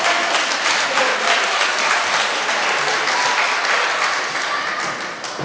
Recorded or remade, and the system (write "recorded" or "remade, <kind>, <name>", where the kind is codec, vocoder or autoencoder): recorded